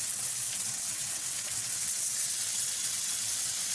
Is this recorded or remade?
remade